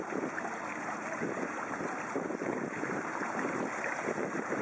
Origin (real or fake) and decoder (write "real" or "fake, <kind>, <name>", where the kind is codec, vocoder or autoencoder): fake, vocoder, BigVGAN v2